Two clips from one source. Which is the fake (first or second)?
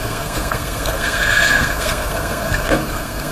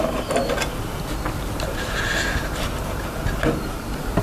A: first